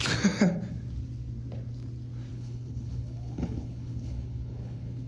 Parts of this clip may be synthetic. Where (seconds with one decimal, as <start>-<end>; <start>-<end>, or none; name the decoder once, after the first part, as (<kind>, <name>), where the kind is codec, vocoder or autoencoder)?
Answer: 2.3-5.1 (codec, HILCodec)